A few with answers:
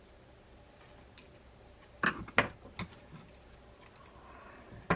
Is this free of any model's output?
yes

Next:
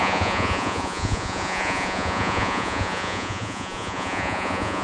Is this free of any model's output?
no